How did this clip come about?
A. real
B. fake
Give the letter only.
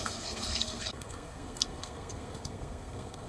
B